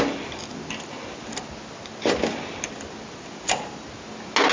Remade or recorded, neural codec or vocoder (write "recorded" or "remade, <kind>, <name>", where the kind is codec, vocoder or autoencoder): recorded